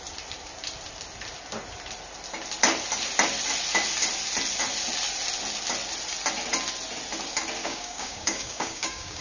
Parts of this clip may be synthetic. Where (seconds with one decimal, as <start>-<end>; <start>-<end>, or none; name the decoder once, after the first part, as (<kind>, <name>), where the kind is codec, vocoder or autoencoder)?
7.6-9.2 (codec, DAC)